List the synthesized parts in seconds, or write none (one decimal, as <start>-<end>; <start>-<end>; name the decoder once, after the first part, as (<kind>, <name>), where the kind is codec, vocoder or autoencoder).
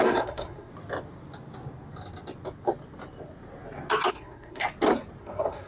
0.0-0.7 (codec, SNAC); 4.1-4.6; 5.2-5.7